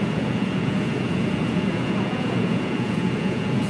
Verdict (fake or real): fake